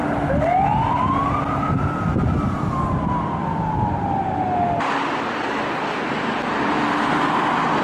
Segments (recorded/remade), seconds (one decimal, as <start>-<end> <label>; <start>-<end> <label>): 0.0-1.7 recorded; 1.7-7.8 remade